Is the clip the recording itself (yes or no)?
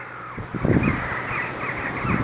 yes